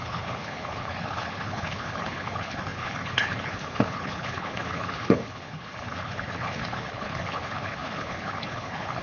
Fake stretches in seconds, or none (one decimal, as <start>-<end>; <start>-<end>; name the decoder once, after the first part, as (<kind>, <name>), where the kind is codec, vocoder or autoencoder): 0.0-9.0 (codec, HILCodec)